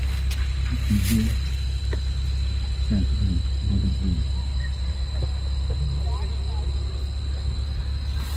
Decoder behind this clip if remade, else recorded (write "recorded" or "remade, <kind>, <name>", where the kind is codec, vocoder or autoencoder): recorded